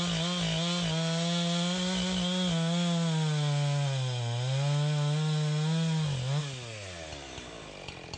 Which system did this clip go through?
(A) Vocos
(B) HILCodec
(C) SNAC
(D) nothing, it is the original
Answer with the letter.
D